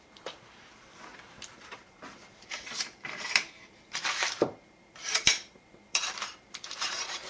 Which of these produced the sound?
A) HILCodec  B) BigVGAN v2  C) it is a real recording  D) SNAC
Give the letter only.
B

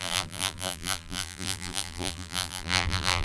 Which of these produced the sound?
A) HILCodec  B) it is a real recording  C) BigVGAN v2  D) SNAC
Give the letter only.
C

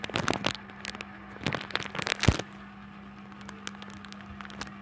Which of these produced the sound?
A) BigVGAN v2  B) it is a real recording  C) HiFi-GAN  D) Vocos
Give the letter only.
B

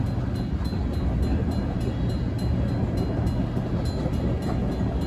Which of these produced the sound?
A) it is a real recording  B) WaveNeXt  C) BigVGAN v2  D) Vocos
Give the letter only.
A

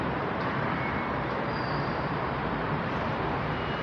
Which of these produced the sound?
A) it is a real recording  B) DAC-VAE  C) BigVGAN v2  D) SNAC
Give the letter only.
C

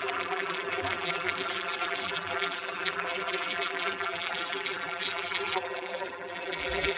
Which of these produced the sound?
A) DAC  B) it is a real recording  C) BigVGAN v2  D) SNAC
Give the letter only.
C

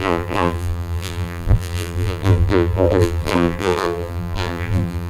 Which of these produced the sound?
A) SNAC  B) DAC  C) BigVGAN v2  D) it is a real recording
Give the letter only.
C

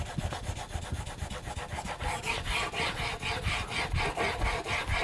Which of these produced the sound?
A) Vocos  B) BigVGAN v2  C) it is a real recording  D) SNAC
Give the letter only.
C